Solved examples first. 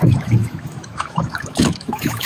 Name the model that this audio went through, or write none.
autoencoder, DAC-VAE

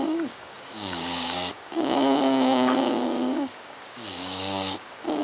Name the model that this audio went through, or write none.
codec, DAC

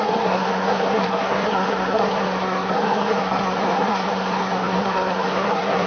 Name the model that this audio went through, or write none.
codec, SNAC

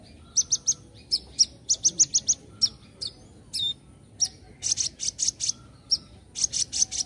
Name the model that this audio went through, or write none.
none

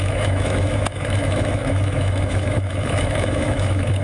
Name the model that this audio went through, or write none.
autoencoder, DAC-VAE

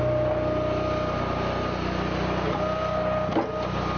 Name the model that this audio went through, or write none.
none